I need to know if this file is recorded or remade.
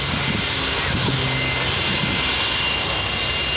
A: recorded